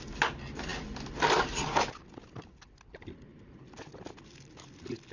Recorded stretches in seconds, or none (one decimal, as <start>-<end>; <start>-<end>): 0.0-5.1